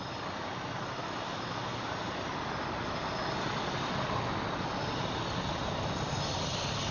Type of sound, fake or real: real